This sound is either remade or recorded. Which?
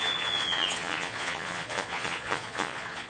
remade